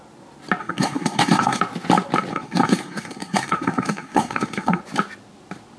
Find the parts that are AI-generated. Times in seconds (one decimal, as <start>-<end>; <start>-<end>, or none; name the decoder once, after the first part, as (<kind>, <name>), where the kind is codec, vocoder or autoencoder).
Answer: 0.6-1.6 (codec, SNAC); 2.3-4.8